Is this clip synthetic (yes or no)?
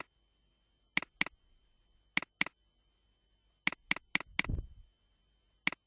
no